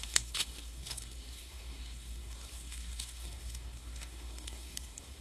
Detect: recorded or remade remade